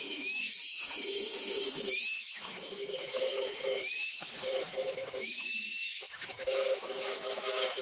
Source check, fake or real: fake